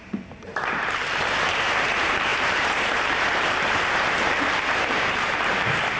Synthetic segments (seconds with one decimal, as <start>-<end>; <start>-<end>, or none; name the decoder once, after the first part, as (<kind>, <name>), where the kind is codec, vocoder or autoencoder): 0.0-6.0 (vocoder, BigVGAN v2)